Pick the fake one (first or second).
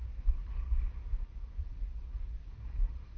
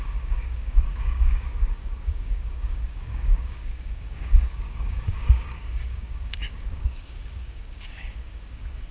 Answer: second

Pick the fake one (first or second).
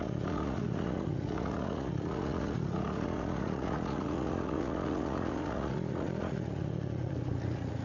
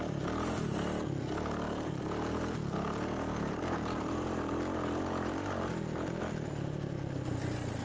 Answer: first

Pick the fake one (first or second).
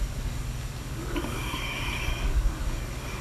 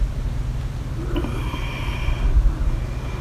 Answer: first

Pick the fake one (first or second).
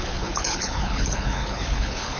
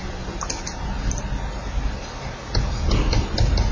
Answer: first